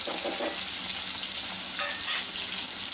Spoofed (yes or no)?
no